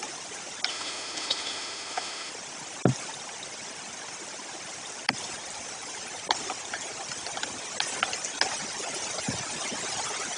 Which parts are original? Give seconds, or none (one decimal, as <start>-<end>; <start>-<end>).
0.0-0.7; 2.3-10.4